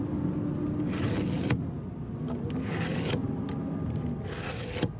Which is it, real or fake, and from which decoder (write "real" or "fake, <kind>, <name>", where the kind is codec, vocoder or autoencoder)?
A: real